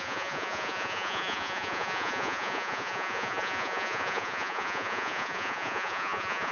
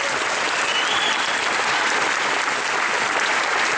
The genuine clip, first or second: second